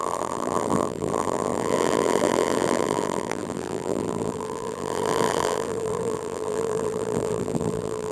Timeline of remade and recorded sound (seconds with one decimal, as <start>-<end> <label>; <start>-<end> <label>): 0.0-8.1 remade